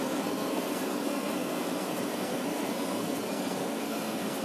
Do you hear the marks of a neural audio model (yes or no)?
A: yes